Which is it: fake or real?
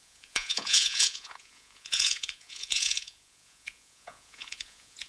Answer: fake